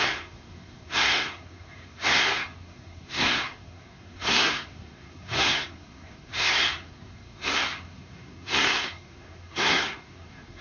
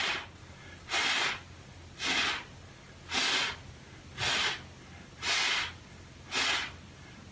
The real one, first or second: second